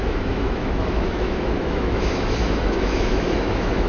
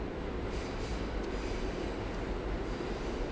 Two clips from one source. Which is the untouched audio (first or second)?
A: second